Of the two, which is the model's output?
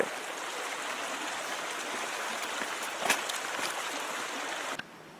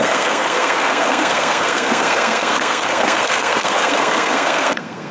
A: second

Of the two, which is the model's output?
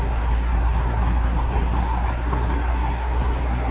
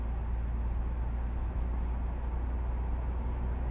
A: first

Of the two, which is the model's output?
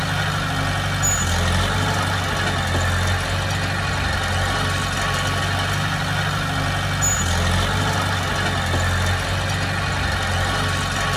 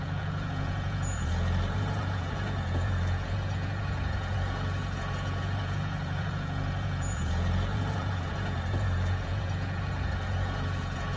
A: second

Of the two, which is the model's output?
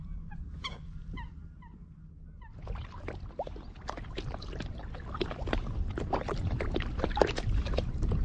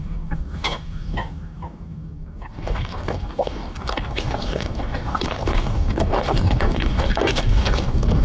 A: second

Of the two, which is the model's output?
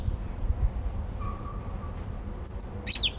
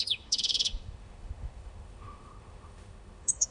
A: second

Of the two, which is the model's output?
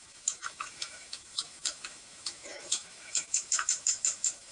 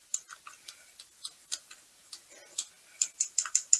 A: first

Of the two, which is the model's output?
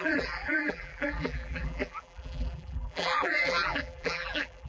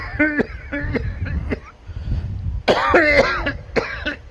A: first